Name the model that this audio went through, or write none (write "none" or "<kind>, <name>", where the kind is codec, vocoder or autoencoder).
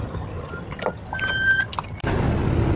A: none